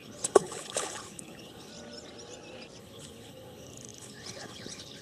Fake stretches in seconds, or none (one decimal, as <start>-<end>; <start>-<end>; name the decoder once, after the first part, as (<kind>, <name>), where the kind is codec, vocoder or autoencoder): 0.0-1.7 (codec, HILCodec); 2.8-5.0